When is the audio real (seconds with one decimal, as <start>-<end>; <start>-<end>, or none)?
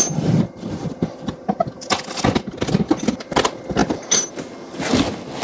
0.0-5.4